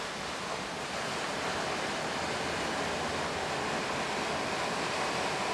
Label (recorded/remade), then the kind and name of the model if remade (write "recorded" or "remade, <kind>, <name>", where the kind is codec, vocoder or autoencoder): recorded